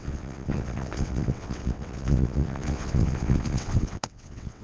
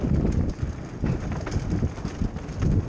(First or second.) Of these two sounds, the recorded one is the second